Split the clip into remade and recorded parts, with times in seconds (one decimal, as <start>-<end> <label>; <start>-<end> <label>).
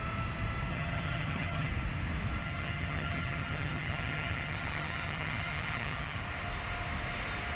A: 0.0-0.7 recorded; 0.7-1.7 remade; 1.7-2.4 recorded; 2.4-6.2 remade; 6.2-7.6 recorded